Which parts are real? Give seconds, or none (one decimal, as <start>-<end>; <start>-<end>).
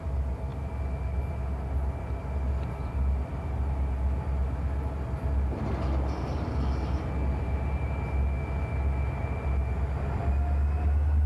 0.0-11.3